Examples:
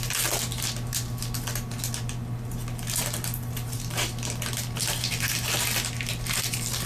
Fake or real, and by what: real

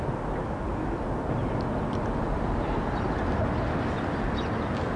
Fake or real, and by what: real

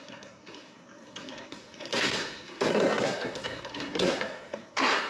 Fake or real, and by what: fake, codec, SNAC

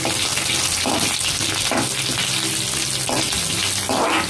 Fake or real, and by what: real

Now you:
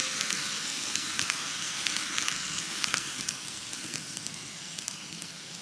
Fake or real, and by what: fake, codec, SNAC